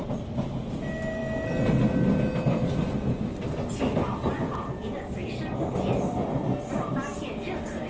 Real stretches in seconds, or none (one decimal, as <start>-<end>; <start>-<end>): 0.0-7.9